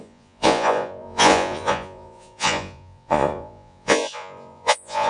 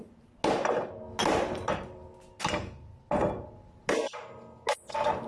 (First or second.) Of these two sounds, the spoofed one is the first